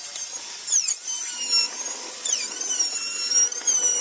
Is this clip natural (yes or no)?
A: no